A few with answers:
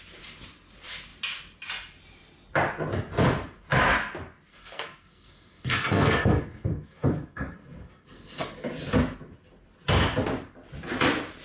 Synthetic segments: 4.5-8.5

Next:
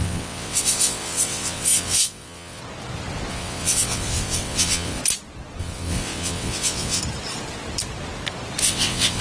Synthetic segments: 0.0-2.6; 3.3-5.0; 5.6-7.0; 8.6-9.2

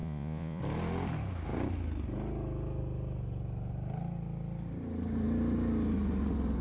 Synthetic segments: 0.0-0.6

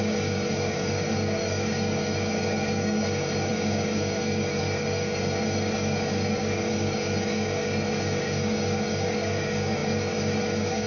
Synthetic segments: 0.0-10.9

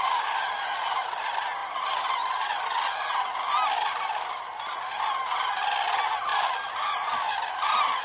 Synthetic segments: 1.6-2.5